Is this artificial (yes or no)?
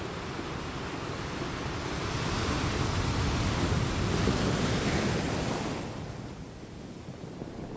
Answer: no